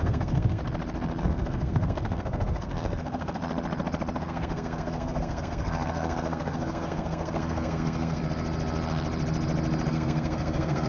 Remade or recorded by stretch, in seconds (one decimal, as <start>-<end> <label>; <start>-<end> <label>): 0.0-0.6 remade; 0.6-1.2 recorded; 1.2-3.4 remade; 3.4-4.2 recorded; 4.2-8.2 remade; 8.2-9.9 recorded; 9.9-10.9 remade